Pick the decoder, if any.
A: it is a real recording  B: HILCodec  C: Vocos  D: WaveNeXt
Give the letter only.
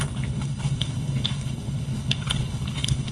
B